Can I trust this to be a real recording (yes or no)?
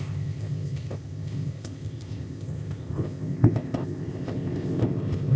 no